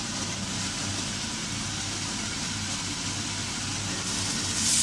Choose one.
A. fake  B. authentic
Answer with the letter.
B